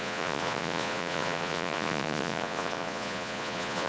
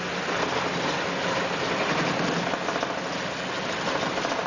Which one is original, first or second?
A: second